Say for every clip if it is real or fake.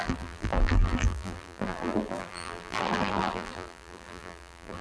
fake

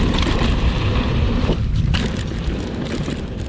fake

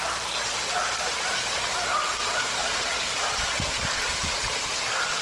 fake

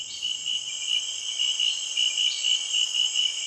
fake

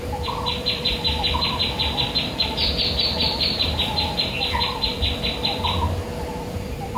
fake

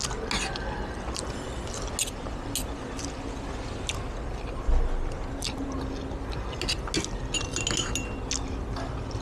real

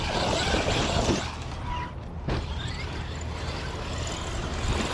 real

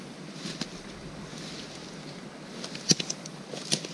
real